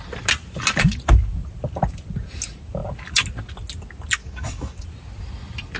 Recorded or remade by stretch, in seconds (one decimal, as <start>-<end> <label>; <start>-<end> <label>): 0.0-4.2 recorded; 4.2-4.8 remade; 4.8-5.8 recorded